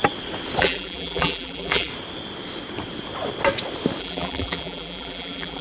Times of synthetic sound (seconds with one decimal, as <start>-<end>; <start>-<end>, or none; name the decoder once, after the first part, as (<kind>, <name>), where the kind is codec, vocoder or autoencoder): 0.6-1.9 (vocoder, BigVGAN v2); 4.0-5.6